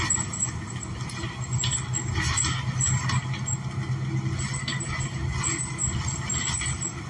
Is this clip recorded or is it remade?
recorded